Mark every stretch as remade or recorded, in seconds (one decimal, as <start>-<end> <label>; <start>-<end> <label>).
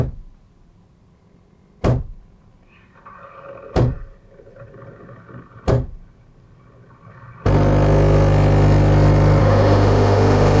0.0-9.4 recorded; 9.4-10.6 remade